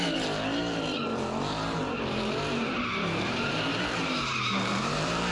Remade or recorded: remade